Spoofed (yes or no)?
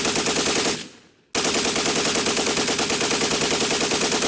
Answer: no